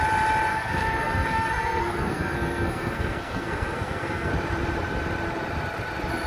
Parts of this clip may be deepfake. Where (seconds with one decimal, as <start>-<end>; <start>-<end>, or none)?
0.5-4.3